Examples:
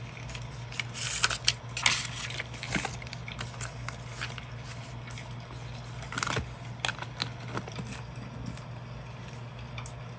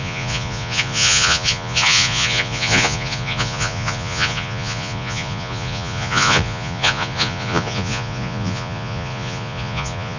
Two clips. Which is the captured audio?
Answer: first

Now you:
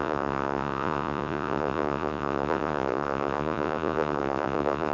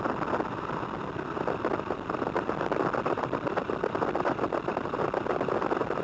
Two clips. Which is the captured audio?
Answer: second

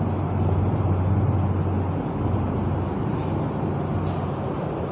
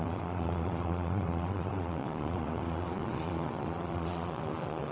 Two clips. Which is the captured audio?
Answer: first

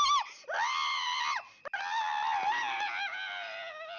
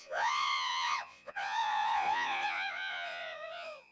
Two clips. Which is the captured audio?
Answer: first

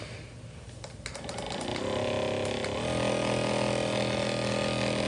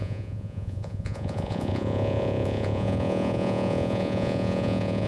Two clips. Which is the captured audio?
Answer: first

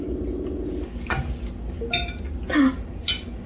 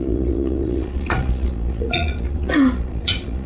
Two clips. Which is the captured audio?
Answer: first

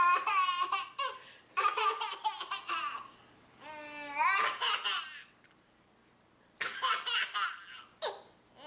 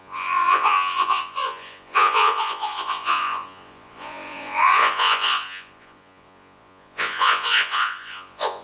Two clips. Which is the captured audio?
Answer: first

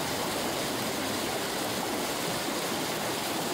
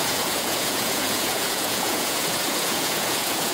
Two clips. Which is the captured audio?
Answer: first